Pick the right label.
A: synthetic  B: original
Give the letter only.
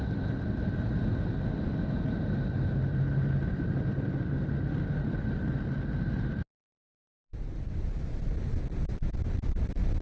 B